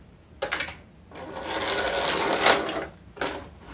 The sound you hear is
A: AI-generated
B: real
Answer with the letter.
B